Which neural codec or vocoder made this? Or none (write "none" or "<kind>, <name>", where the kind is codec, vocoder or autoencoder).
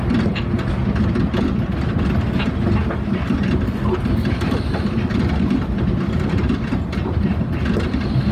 none